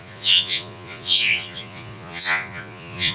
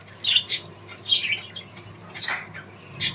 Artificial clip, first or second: first